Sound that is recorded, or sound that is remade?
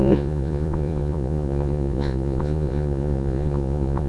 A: remade